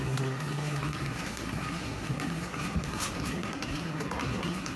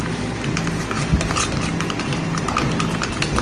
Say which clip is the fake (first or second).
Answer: first